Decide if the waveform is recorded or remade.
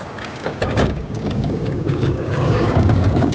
remade